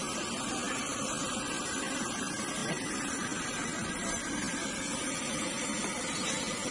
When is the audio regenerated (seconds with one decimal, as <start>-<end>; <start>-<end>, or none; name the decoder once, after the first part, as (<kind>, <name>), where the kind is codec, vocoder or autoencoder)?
none